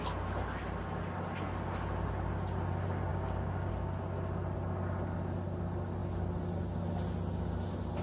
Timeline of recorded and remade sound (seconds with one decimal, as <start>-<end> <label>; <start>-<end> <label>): 0.0-3.1 recorded; 3.1-3.7 remade; 3.7-8.0 recorded